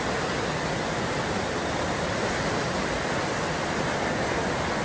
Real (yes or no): yes